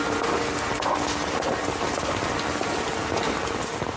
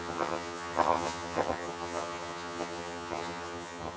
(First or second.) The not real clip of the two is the second